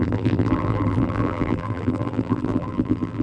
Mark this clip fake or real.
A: fake